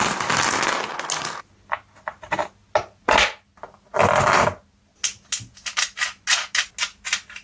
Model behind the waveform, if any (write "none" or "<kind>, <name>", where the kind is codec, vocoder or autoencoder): none